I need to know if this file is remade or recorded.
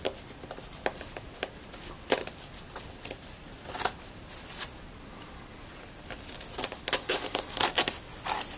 recorded